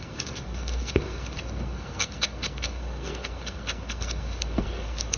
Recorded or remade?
remade